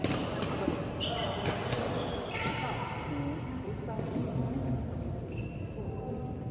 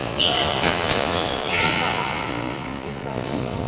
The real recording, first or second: first